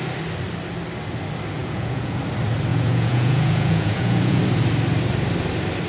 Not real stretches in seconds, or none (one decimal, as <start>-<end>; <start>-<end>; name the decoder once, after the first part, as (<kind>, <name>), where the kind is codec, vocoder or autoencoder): 1.6-2.2 (vocoder, Vocos); 2.7-4.4